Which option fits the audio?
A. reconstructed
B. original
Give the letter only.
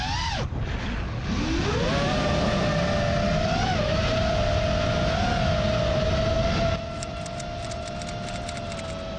B